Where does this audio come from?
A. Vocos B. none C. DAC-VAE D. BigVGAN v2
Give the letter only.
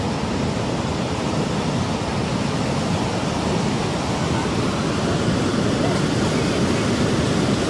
B